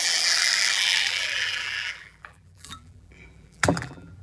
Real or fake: fake